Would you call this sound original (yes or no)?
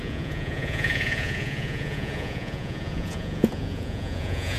no